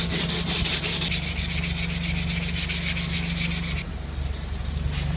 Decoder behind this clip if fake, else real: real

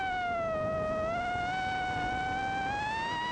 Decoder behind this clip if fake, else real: real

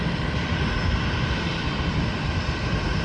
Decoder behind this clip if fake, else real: fake, vocoder, BigVGAN v2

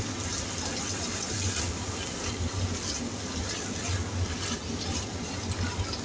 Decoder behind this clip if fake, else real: real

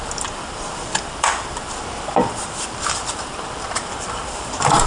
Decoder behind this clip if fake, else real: fake, vocoder, BigVGAN v2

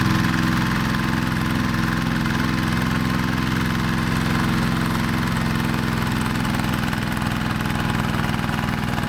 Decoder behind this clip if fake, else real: real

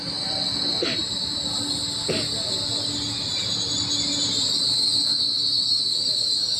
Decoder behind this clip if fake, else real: real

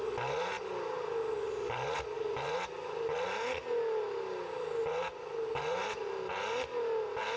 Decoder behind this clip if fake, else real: real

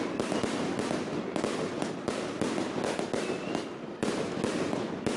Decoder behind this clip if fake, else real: real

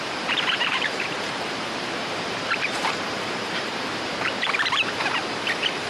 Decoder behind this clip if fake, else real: fake, vocoder, BigVGAN v2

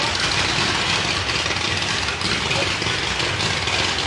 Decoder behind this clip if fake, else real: real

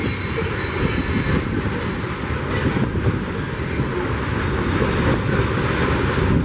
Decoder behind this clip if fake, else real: real